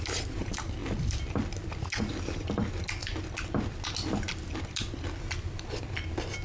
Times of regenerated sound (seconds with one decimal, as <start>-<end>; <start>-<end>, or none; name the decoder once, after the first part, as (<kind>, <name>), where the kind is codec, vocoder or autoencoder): none